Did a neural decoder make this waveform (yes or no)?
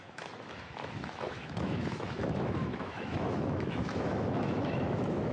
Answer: yes